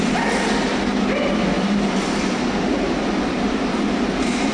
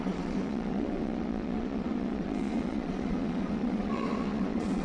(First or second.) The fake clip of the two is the second